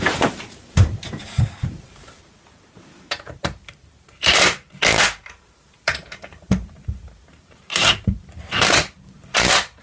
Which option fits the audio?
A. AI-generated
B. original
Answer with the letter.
A